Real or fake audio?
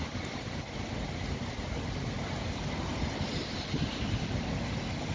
real